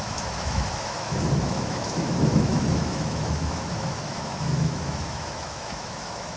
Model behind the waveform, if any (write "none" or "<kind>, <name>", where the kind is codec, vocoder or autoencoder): autoencoder, DAC-VAE